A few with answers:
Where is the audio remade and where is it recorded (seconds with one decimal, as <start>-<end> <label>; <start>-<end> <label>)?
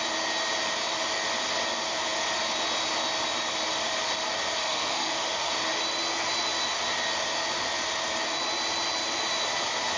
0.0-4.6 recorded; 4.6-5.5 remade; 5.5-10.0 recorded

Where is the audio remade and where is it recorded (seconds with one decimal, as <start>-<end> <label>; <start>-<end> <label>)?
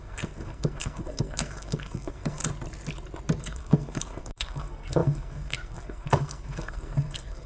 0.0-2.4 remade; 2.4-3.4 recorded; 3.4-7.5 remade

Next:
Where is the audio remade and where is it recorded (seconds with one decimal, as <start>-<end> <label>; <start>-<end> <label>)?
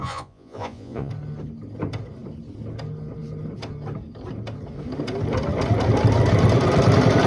0.0-1.1 remade; 1.1-7.3 recorded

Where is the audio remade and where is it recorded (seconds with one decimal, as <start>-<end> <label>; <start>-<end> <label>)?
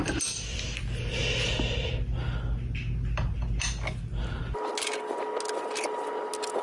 0.0-6.6 recorded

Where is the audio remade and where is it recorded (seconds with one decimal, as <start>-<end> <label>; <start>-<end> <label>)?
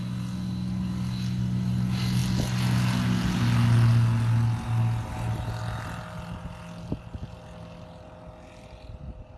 0.0-9.4 recorded